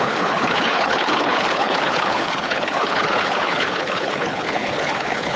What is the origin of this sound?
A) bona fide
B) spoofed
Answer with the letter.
B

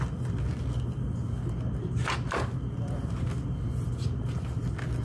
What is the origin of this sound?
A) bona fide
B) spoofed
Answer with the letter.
A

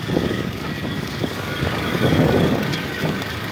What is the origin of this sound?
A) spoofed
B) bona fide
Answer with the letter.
A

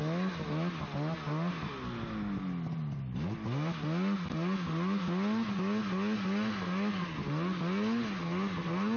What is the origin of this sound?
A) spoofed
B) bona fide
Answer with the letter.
B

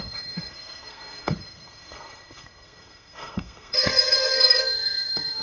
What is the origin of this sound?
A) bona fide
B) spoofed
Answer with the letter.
B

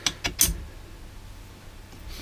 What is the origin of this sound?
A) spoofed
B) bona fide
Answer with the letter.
B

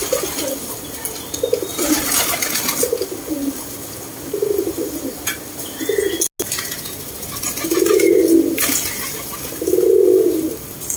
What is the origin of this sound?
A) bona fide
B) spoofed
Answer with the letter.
A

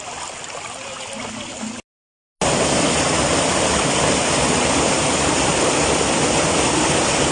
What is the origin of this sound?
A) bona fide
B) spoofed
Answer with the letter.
A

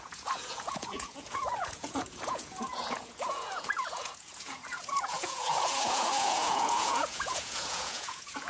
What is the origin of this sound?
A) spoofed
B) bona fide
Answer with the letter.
A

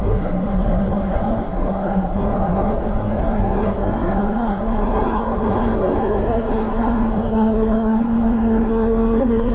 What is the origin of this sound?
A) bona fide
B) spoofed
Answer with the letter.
B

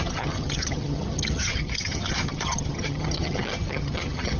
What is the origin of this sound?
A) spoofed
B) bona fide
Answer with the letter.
A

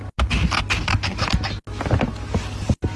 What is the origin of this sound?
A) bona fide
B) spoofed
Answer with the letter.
A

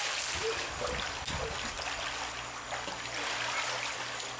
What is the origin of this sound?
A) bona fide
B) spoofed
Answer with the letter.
A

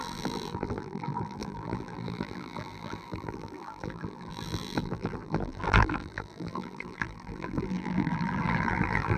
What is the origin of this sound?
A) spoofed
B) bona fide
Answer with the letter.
A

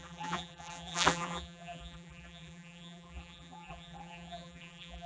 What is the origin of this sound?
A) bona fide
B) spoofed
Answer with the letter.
B